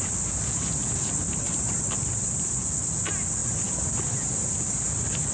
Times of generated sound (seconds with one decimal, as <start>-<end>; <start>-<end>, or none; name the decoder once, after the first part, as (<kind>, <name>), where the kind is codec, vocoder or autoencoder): 0.6-1.5 (vocoder, BigVGAN v2)

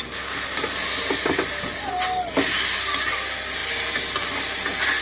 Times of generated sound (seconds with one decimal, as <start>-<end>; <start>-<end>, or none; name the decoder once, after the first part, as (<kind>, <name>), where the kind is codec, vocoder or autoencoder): none

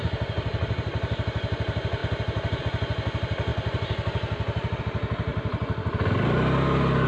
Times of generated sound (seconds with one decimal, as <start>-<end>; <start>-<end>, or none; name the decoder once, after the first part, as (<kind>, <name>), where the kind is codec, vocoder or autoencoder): 2.0-2.6 (vocoder, BigVGAN v2); 3.5-4.8; 5.3-6.0

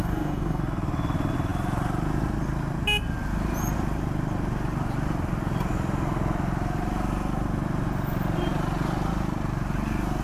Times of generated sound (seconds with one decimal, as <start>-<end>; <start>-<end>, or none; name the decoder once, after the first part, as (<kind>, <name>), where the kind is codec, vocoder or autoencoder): 0.0-0.6 (codec, DAC)

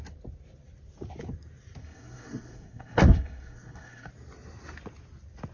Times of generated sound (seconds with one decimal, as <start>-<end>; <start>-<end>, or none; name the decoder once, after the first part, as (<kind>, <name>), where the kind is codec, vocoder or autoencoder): 1.8-4.1 (codec, SNAC)

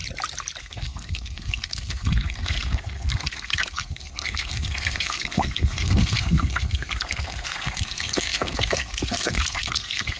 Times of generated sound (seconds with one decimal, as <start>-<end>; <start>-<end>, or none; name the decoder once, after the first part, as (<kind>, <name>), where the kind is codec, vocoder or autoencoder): 0.6-10.2 (codec, SNAC)

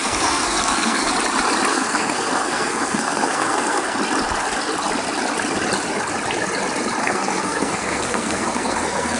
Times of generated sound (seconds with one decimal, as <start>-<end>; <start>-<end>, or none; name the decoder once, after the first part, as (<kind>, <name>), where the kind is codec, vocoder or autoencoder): 0.0-1.1 (codec, SNAC); 1.7-4.0; 7.0-9.2